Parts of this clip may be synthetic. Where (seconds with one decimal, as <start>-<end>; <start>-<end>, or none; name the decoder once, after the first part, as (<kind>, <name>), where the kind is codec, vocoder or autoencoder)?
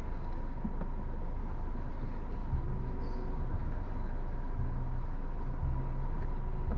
1.4-1.9 (autoencoder, DAC-VAE); 2.4-3.0; 3.6-5.5